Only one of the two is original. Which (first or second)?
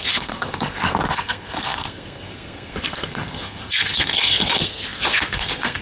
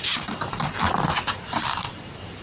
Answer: second